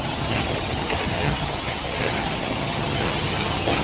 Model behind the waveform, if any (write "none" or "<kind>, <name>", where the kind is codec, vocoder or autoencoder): vocoder, HiFi-GAN